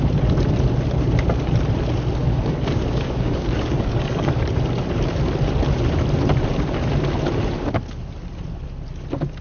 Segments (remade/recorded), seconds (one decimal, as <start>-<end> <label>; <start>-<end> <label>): 0.0-2.2 recorded; 2.2-4.4 remade; 4.4-9.4 recorded